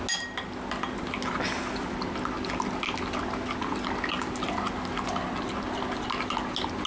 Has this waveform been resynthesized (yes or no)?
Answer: no